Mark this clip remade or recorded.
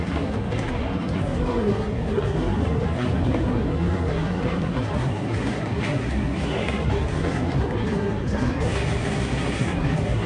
remade